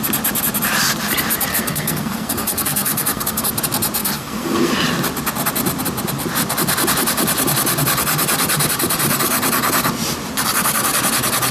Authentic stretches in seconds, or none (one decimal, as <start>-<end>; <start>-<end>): 0.0-1.5; 3.5-4.0; 4.7-11.5